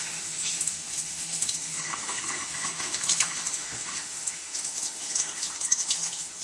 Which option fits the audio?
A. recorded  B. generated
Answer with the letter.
B